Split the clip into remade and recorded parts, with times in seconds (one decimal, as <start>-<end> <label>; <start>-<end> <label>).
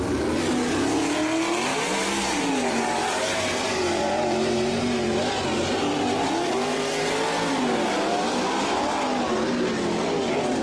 0.0-1.7 recorded; 1.7-4.8 remade; 4.8-10.6 recorded